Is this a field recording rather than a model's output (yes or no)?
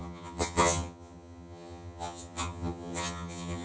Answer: no